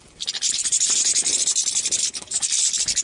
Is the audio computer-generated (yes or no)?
no